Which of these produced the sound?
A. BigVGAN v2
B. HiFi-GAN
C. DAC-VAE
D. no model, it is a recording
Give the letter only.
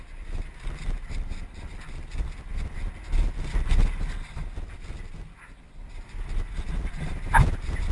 D